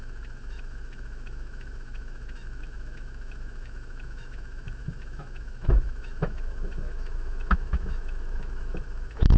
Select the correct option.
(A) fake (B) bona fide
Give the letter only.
A